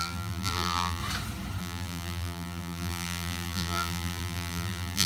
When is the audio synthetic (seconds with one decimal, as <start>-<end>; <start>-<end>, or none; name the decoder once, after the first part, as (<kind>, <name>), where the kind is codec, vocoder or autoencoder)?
0.0-1.0 (vocoder, BigVGAN v2); 1.6-5.1